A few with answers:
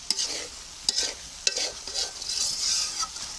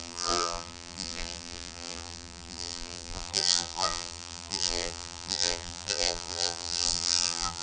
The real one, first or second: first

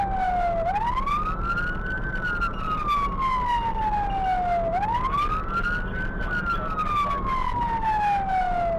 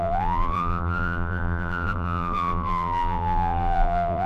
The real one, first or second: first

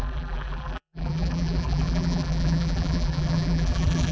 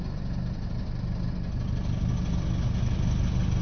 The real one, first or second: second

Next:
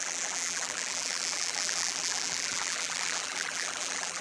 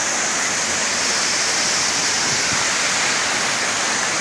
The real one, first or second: second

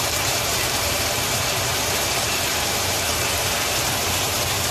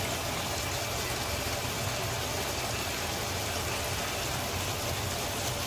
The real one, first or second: second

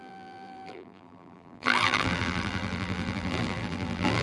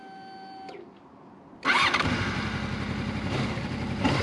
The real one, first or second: second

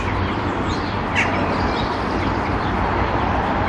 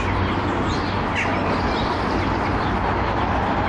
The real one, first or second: second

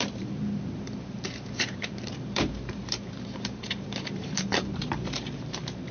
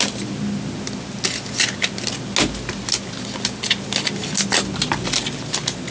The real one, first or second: second